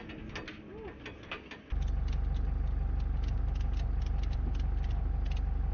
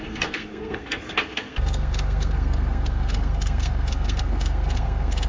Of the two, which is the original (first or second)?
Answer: first